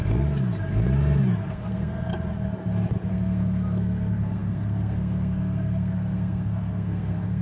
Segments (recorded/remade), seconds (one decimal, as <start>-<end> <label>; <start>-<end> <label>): 0.0-1.5 recorded; 1.5-2.1 remade; 2.1-3.1 recorded; 3.1-7.4 remade